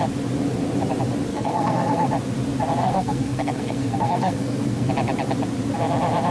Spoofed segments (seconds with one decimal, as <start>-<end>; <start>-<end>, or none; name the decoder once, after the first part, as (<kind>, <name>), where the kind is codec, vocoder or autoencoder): 1.3-2.1 (codec, SNAC); 2.8-4.9